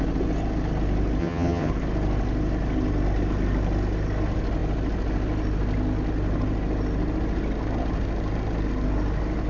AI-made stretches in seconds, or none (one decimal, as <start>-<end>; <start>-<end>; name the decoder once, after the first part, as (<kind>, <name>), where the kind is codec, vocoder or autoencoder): 1.2-1.7 (vocoder, HiFi-GAN)